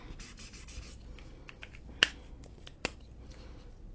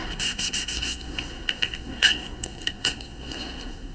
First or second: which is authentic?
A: first